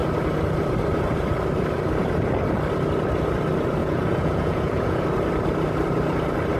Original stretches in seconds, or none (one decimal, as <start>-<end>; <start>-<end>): 0.0-3.8; 5.0-6.6